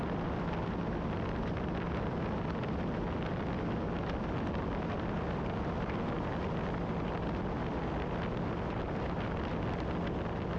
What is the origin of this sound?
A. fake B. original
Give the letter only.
B